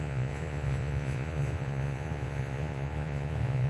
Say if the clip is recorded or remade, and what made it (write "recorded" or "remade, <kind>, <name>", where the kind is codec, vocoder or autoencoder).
remade, vocoder, Vocos